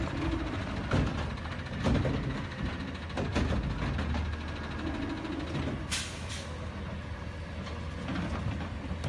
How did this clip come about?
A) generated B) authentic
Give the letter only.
B